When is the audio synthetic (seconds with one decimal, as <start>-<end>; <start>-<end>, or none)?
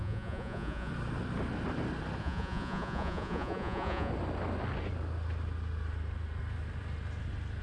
0.0-0.9; 2.2-4.1